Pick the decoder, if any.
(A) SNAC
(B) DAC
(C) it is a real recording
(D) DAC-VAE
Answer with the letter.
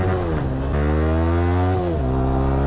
C